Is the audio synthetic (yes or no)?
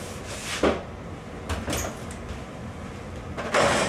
no